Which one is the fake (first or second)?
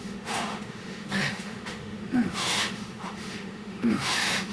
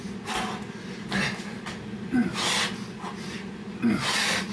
first